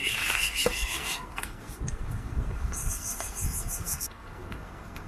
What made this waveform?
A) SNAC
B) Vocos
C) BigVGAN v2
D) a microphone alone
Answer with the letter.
A